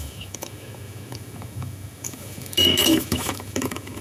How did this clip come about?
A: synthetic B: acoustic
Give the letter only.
A